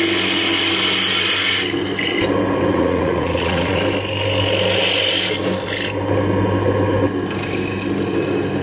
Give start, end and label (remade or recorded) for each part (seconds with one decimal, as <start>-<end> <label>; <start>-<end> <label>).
0.0-2.7 recorded; 2.7-3.8 remade; 3.8-8.6 recorded